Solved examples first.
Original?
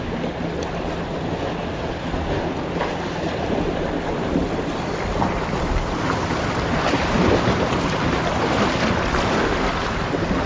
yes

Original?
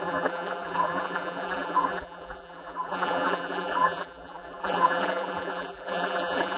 no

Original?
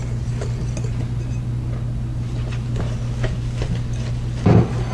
yes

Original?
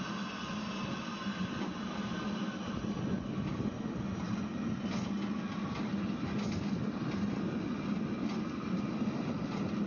yes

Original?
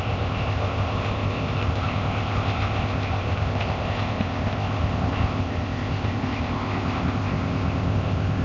no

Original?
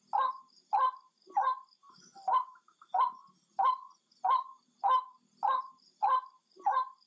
yes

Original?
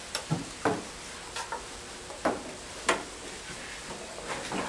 yes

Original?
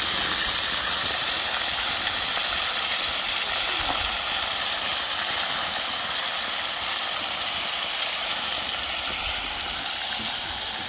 no